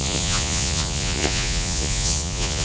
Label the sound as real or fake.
fake